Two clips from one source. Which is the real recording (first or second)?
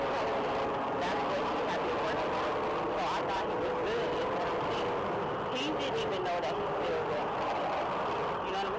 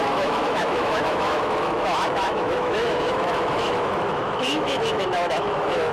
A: first